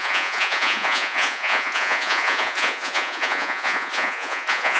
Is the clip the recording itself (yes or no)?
no